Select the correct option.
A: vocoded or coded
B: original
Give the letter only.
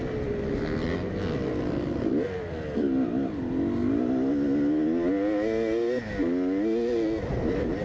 B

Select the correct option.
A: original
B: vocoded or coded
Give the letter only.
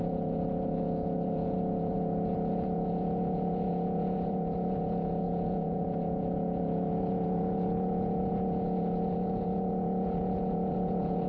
B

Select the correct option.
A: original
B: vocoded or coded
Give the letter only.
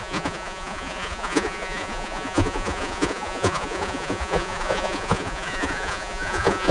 B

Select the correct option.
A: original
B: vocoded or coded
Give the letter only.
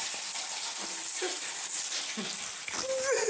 A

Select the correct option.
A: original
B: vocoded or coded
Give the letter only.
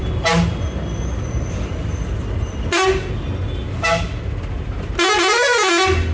A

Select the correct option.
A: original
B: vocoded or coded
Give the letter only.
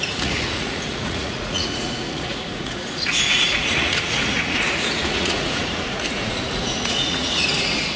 B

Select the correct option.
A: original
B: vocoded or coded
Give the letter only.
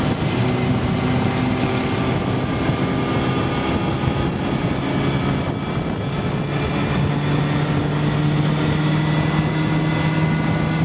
A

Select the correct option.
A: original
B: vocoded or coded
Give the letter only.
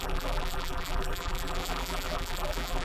B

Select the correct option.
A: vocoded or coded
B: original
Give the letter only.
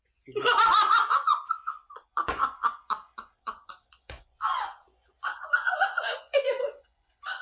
A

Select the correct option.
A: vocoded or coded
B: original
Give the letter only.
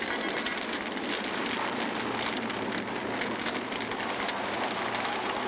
B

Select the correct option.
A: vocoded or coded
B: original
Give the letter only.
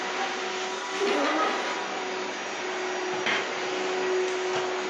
B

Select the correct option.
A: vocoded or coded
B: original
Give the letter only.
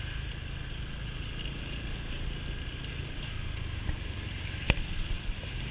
B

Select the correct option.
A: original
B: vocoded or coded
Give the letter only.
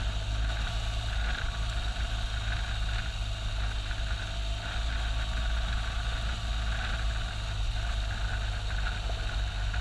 A